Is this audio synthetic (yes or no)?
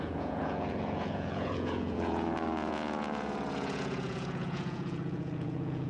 yes